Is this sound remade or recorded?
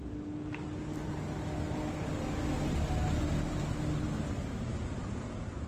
recorded